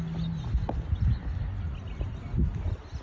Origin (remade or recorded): recorded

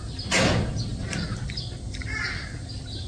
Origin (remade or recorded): recorded